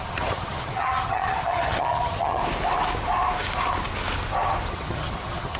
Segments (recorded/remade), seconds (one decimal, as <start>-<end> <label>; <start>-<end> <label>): 0.0-2.4 remade; 2.4-4.7 recorded; 4.7-5.6 remade